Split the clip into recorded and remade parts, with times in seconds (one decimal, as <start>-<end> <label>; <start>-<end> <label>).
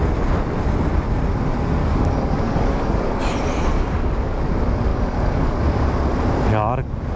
0.0-1.8 recorded; 1.8-3.2 remade; 3.2-3.7 recorded; 3.7-4.4 remade; 4.4-4.9 recorded; 4.9-5.6 remade; 5.6-7.2 recorded